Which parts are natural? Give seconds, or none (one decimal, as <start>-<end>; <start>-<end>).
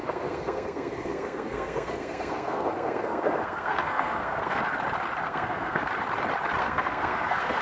4.6-5.2; 5.9-6.6